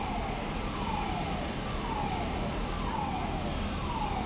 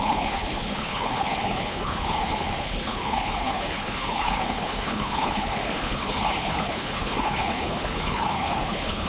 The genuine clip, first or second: first